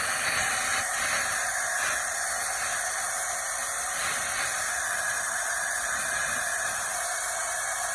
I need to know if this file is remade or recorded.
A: recorded